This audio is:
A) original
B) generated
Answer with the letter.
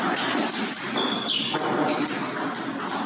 A